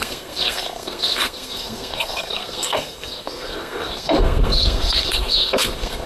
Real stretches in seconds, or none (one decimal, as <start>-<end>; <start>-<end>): none